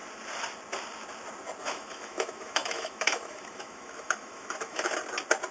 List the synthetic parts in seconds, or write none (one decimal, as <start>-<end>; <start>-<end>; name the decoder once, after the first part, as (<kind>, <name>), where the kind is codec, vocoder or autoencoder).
1.6-4.9 (autoencoder, DAC-VAE)

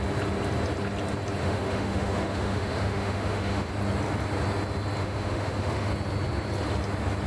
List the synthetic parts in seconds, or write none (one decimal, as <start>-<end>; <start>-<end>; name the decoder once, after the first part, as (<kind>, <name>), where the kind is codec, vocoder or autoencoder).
1.4-3.7 (autoencoder, DAC-VAE); 5.0-5.9

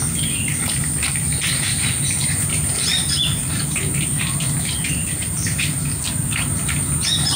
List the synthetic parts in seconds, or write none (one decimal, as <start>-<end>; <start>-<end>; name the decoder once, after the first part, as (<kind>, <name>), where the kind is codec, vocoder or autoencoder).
none

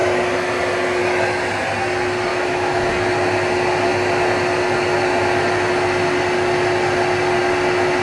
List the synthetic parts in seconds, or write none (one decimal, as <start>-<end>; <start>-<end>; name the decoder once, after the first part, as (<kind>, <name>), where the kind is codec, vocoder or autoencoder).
2.3-2.9 (autoencoder, DAC-VAE)

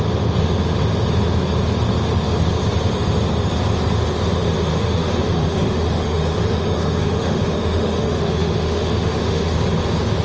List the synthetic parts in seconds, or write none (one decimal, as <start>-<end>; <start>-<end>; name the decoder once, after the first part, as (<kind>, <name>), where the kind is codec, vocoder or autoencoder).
4.7-9.5 (autoencoder, DAC-VAE)